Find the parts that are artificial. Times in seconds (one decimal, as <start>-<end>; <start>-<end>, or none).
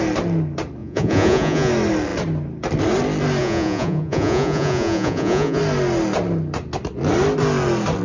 0.8-1.7; 3.4-5.6